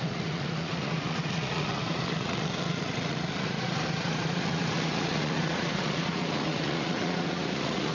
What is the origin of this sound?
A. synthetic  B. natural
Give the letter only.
A